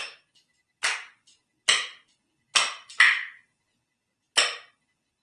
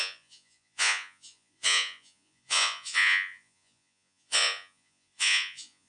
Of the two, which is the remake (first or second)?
second